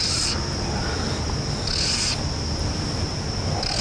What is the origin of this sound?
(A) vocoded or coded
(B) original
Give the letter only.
B